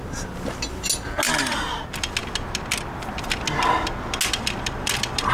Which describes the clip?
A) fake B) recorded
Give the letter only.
B